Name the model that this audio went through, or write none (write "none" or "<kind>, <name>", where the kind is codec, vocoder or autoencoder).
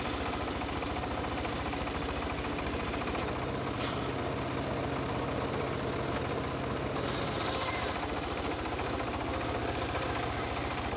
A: none